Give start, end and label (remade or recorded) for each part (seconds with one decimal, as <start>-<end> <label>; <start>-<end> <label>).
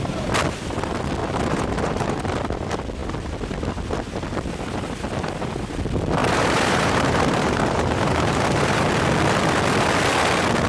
0.0-1.2 recorded; 1.2-2.2 remade; 2.2-6.2 recorded; 6.2-8.9 remade; 8.9-10.7 recorded